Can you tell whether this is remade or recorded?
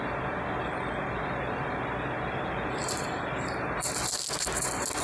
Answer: recorded